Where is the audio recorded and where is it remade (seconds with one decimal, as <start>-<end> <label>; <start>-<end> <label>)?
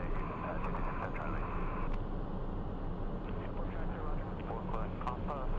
0.0-5.6 recorded